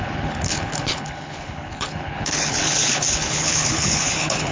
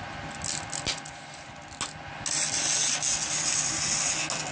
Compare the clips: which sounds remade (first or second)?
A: first